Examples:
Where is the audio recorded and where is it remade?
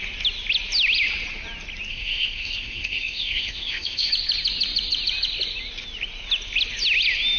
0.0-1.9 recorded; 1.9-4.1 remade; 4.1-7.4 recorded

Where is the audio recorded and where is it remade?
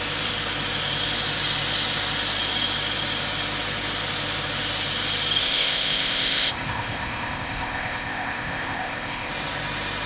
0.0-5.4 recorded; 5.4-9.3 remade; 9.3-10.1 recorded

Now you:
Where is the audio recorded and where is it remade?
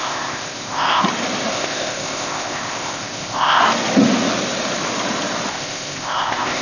0.0-1.0 remade; 1.0-1.5 recorded; 1.5-3.6 remade; 3.6-5.5 recorded; 5.5-6.6 remade